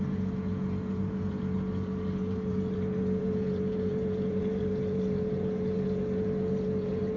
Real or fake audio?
fake